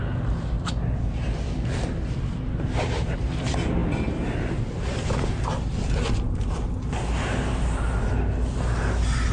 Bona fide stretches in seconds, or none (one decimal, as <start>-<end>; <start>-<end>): 0.0-9.3